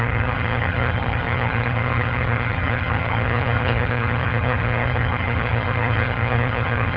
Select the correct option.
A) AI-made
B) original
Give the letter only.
A